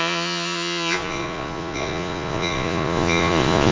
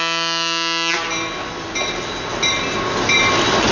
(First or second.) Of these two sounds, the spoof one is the first